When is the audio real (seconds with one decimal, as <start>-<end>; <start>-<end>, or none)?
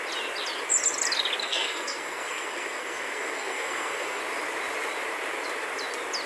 0.0-1.4; 4.2-6.3